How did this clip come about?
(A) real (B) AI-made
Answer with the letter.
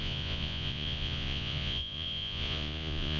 B